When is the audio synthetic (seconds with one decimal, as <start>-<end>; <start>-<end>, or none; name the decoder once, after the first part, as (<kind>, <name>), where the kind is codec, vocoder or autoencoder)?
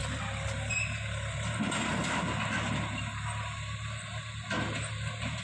none